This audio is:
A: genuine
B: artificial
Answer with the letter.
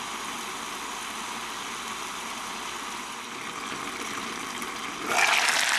A